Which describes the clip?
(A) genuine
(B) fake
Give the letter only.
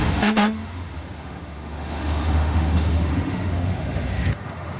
B